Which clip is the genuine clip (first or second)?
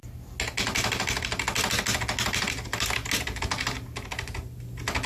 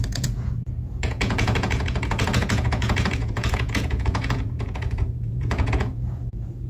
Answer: first